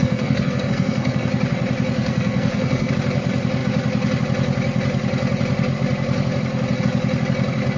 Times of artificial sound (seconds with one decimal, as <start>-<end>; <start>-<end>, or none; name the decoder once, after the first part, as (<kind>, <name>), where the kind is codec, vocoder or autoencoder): 0.0-1.3 (codec, SNAC); 2.0-2.9